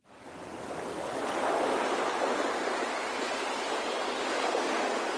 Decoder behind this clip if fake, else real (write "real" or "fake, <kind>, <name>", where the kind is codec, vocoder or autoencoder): real